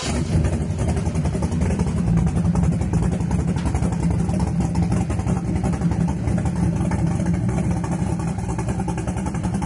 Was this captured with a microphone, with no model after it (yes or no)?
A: yes